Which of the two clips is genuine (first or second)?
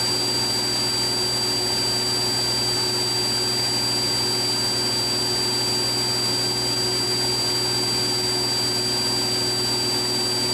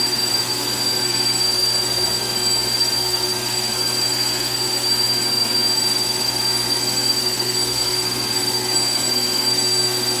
first